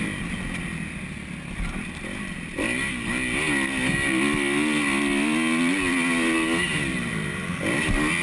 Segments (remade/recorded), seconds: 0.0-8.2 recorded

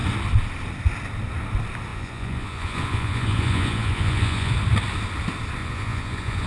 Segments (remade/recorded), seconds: 0.0-1.9 recorded; 1.9-4.5 remade; 4.5-5.6 recorded; 5.6-6.5 remade

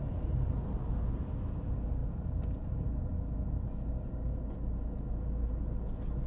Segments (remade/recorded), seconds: 0.0-6.3 recorded

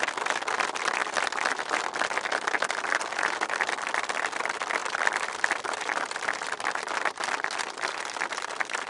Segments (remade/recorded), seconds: 0.0-8.9 recorded

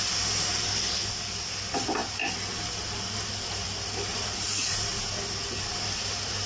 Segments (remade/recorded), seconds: 0.0-6.5 recorded

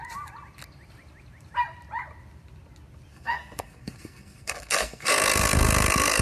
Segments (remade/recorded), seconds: 0.0-3.1 recorded; 3.1-6.2 remade

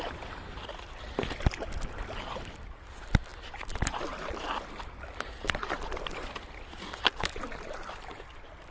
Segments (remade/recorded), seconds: 0.0-8.7 recorded

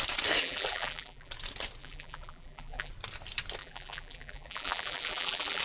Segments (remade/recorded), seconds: 0.0-0.4 recorded; 0.4-1.3 remade; 1.3-1.8 recorded; 1.8-2.9 remade; 2.9-3.6 recorded; 3.6-5.6 remade